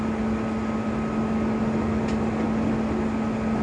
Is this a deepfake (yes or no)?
no